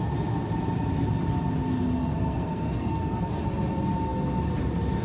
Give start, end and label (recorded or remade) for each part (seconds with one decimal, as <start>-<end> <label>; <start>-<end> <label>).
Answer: 0.0-2.0 recorded; 2.0-3.4 remade; 3.4-5.0 recorded